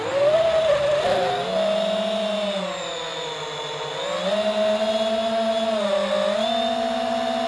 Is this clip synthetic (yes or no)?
no